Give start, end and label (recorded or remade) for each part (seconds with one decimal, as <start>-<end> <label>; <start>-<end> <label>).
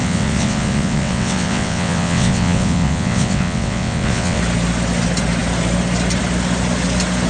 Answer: 0.0-4.4 remade; 4.4-7.3 recorded